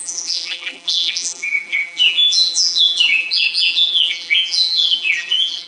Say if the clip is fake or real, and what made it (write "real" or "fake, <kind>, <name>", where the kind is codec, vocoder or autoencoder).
fake, vocoder, BigVGAN v2